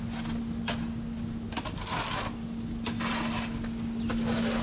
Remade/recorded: recorded